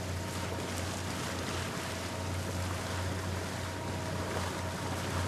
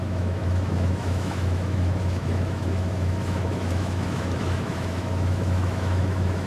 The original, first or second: first